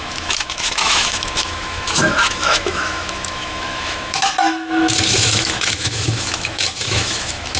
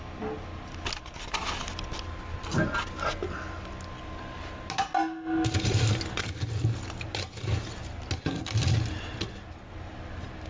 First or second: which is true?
second